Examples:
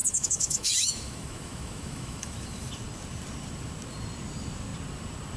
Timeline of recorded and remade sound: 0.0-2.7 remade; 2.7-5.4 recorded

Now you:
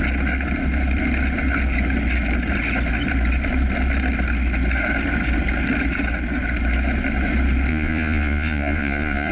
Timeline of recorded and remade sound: 0.0-7.7 recorded; 7.7-9.3 remade

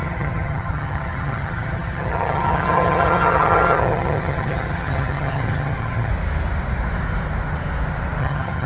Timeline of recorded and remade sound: 0.0-6.1 remade; 6.1-8.2 recorded; 8.2-8.7 remade